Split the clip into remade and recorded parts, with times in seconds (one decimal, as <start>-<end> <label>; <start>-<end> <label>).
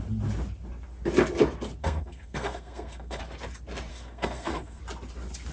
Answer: 0.0-1.8 recorded; 1.8-3.2 remade; 3.2-3.9 recorded; 3.9-4.8 remade; 4.8-5.5 recorded